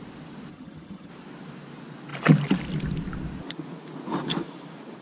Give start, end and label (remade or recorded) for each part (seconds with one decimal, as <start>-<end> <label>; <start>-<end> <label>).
0.0-0.5 recorded; 0.5-1.1 remade; 1.1-5.0 recorded